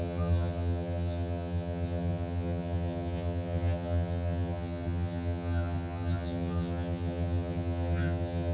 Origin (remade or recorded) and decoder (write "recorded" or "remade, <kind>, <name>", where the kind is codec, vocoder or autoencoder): remade, vocoder, HiFi-GAN